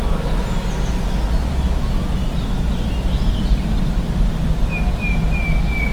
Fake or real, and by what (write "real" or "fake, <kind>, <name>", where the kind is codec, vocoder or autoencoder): real